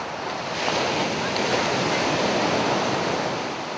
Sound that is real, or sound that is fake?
real